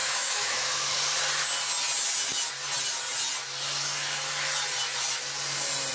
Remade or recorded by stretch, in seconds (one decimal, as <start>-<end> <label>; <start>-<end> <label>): 0.0-0.9 remade; 0.9-5.9 recorded